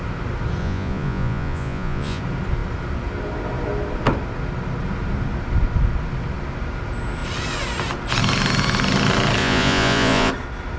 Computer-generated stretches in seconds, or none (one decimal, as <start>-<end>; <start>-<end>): 0.6-2.2; 9.4-10.3